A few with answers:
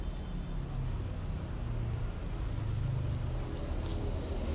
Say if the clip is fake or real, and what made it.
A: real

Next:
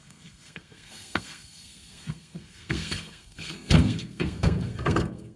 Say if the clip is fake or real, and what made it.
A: fake, codec, SNAC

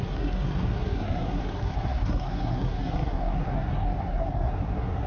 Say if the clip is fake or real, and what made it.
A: fake, codec, SNAC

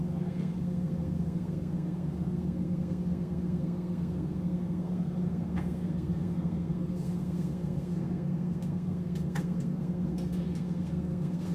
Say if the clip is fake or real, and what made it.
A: fake, codec, SNAC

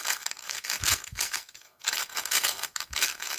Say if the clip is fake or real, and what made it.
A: fake, codec, SNAC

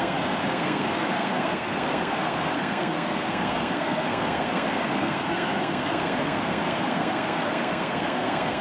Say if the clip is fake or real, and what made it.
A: fake, codec, SNAC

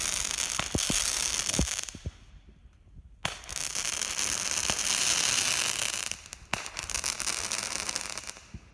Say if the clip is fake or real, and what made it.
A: real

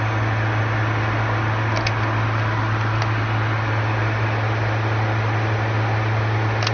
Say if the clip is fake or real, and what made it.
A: real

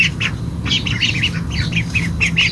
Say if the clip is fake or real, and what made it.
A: real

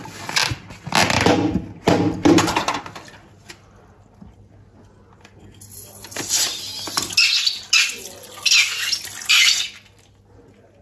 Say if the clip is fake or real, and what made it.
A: real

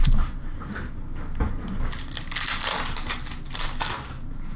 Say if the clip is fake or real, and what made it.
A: real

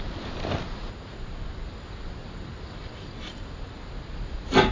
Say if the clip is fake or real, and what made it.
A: real